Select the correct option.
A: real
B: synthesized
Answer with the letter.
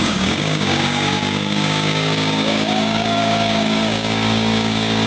B